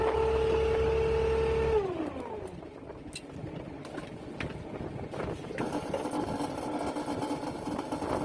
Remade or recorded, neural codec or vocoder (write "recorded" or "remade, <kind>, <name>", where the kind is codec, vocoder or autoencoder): recorded